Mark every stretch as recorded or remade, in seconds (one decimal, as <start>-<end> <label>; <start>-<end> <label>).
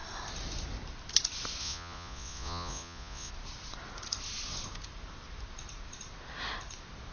0.0-1.6 recorded; 1.6-3.3 remade; 3.3-7.1 recorded